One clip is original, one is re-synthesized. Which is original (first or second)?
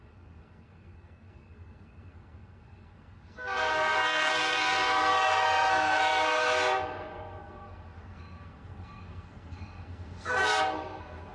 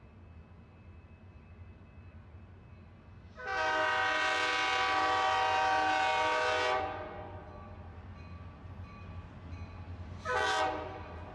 second